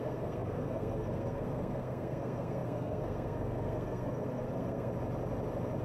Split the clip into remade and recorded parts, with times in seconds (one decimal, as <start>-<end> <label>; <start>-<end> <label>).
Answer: 0.0-4.9 remade; 4.9-5.8 recorded